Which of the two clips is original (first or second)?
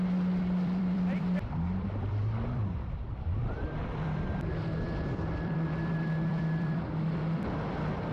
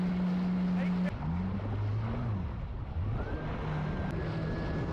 second